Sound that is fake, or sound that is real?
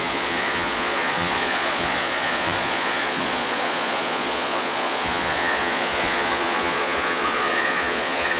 fake